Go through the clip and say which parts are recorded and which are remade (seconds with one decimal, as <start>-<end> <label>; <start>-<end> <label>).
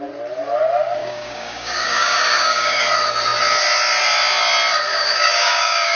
0.0-1.0 recorded; 1.0-2.8 remade; 2.8-4.9 recorded; 4.9-6.0 remade